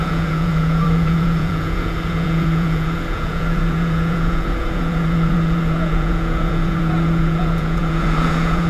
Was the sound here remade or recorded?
remade